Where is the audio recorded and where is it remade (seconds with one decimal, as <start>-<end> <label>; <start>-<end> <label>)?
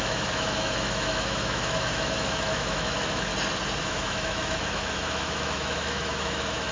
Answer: 0.0-3.3 remade; 3.3-3.8 recorded; 3.8-6.7 remade